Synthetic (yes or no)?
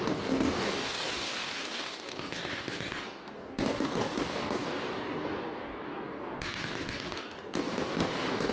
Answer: yes